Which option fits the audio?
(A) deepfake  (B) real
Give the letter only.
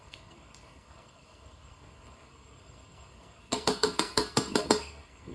A